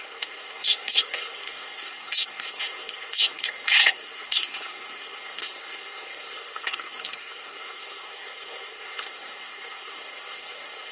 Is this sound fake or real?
fake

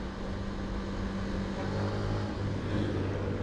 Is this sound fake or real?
real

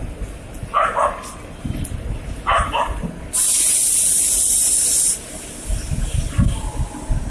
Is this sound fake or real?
real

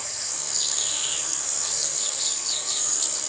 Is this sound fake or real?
fake